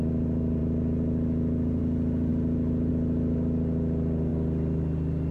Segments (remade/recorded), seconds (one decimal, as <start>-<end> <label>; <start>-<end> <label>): 0.0-5.3 recorded